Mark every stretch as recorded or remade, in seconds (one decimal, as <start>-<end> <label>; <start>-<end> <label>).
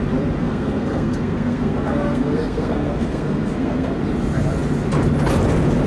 0.0-0.4 recorded; 0.4-3.9 remade; 3.9-5.9 recorded